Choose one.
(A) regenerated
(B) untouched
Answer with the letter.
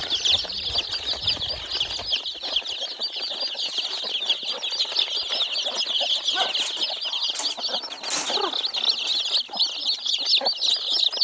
B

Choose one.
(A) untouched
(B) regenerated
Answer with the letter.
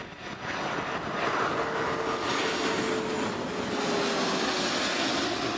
A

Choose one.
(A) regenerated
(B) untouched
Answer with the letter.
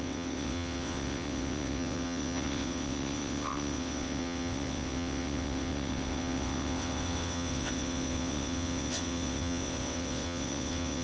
A